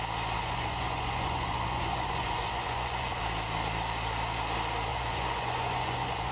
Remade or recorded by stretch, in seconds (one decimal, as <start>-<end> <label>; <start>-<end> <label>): 0.0-0.4 recorded; 0.4-3.2 remade; 3.2-4.9 recorded; 4.9-6.3 remade